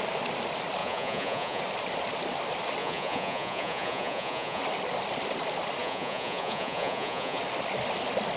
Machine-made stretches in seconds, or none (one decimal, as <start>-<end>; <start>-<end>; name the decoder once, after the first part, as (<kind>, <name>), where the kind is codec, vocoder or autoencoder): 0.8-1.6 (vocoder, Vocos); 2.8-4.6; 5.8-7.4